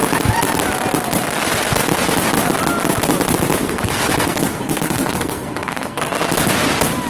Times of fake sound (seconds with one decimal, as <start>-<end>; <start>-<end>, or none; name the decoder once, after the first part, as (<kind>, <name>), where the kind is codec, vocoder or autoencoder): 3.6-6.1 (codec, SNAC)